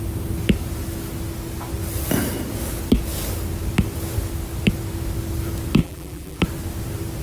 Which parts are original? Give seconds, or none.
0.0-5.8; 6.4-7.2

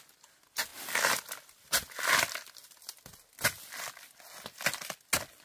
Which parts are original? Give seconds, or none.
0.0-5.4

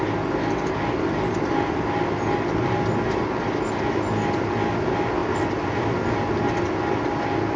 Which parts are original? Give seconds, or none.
0.0-7.6

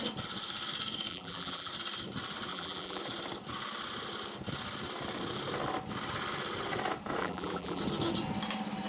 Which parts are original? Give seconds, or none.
0.0-1.1; 1.7-2.5; 3.0-7.2; 7.8-8.9

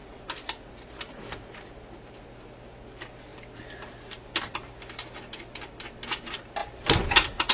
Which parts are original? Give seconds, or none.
0.0-6.6

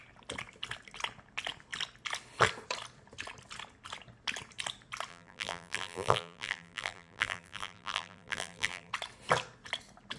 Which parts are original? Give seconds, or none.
0.0-5.1; 8.9-10.2

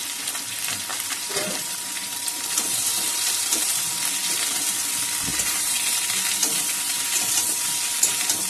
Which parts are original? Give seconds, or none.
0.0-0.9; 3.9-5.3; 7.7-8.5

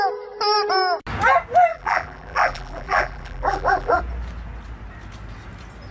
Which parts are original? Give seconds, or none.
0.0-1.7; 4.0-5.9